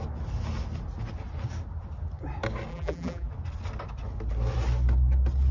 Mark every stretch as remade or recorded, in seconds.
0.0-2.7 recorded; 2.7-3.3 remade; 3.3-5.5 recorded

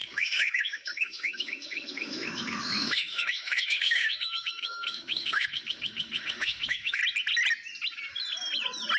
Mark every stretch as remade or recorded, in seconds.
0.0-7.0 remade; 7.0-9.0 recorded

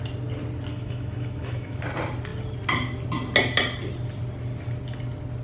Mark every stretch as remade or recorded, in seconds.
0.0-0.7 recorded; 0.7-1.8 remade; 1.8-5.4 recorded

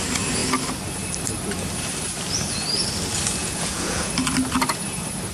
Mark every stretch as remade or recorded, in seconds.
0.0-3.4 recorded; 3.4-4.1 remade; 4.1-5.3 recorded

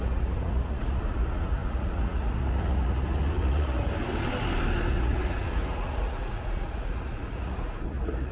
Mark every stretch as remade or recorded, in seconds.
0.0-3.9 remade; 3.9-4.9 recorded; 4.9-8.3 remade